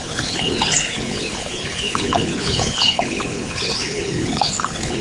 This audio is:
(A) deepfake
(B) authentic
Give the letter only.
A